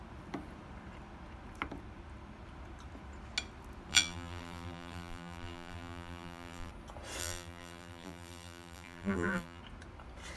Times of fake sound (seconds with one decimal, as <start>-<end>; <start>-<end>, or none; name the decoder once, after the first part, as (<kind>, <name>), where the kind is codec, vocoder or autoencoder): 3.9-6.7 (vocoder, BigVGAN v2); 7.2-9.6